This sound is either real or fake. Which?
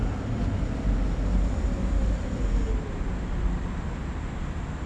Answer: real